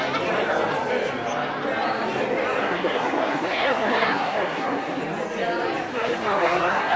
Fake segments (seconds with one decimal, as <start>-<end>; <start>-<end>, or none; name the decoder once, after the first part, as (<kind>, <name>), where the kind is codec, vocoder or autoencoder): 2.6-5.0 (codec, SNAC); 5.9-7.0